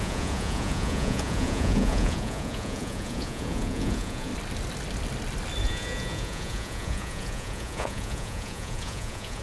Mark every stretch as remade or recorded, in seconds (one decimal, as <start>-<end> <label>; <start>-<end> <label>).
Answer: 0.0-4.3 remade; 4.3-5.6 recorded; 5.6-9.4 remade